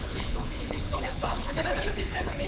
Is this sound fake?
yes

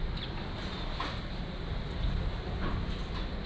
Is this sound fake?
no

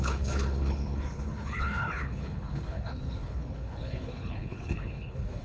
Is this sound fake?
yes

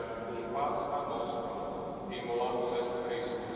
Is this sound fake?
no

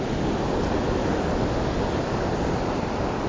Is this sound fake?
no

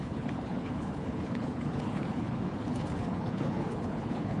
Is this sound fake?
yes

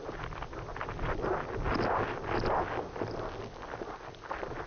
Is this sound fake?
no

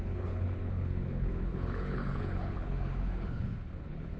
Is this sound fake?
yes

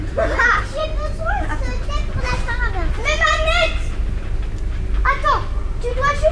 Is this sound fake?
no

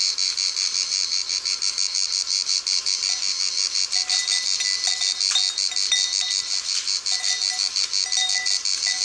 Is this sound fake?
no